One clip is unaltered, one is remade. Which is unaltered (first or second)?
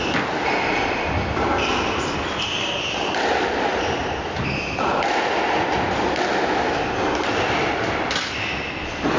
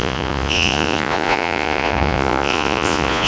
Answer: first